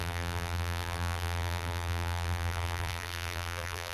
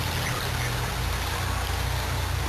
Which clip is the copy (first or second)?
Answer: first